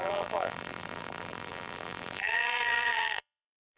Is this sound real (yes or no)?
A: no